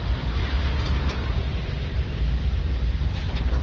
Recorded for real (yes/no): no